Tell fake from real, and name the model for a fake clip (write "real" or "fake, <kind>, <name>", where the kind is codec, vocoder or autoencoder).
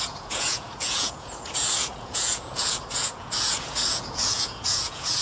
fake, vocoder, Vocos